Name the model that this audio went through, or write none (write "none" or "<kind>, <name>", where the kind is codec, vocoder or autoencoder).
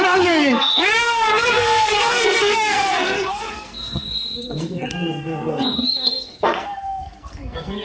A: codec, SNAC